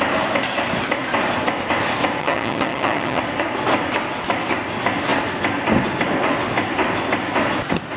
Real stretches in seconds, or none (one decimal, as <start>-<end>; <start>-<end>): 0.0-2.2; 3.2-8.0